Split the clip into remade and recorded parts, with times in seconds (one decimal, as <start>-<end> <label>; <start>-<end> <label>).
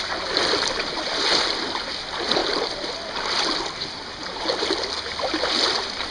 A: 0.0-6.1 recorded